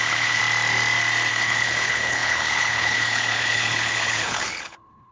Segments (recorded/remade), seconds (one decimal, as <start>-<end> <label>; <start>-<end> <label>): 0.0-0.4 remade; 0.4-1.3 recorded; 1.3-5.1 remade